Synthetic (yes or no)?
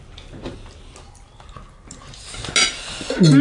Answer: no